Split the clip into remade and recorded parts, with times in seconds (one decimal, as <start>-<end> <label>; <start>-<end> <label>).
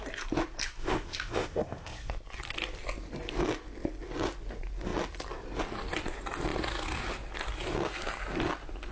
0.0-0.8 recorded; 0.8-2.1 remade; 2.1-8.9 recorded